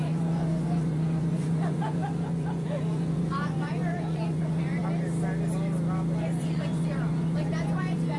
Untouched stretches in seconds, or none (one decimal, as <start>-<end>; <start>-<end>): 4.8-6.4